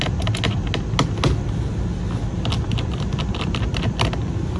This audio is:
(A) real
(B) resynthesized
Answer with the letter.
A